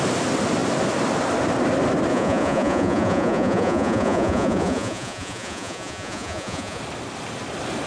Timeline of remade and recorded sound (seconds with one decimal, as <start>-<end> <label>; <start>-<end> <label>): 0.0-2.1 recorded; 2.1-6.8 remade; 6.8-7.9 recorded